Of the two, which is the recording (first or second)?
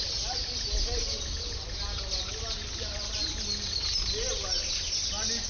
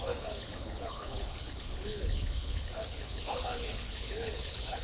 first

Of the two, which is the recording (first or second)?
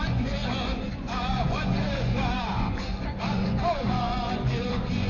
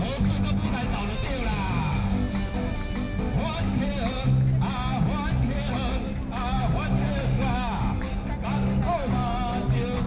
second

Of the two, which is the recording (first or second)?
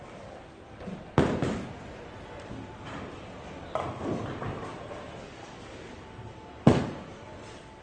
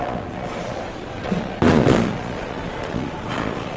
first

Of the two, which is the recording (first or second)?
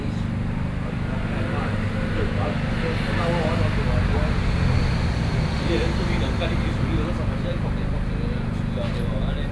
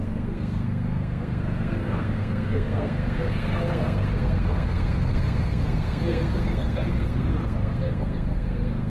first